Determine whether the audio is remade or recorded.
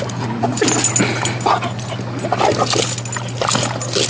recorded